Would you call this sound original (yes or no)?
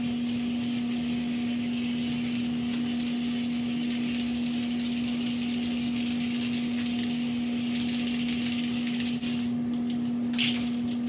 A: yes